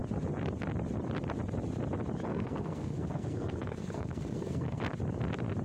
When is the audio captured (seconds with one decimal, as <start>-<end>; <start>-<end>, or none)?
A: 0.0-2.3; 4.8-5.6